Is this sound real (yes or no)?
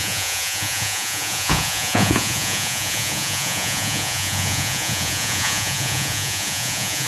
no